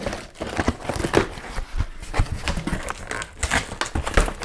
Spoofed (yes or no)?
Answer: no